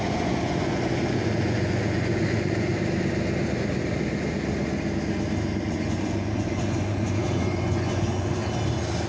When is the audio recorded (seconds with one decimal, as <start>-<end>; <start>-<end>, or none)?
2.7-5.6; 8.4-9.1